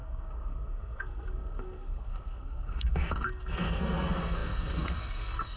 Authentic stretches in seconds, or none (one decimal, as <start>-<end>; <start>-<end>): none